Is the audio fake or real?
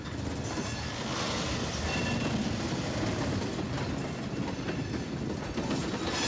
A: real